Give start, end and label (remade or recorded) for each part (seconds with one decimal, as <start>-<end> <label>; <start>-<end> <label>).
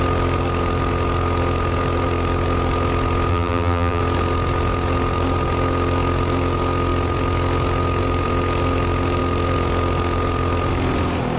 0.0-3.3 recorded; 3.3-4.0 remade; 4.0-11.4 recorded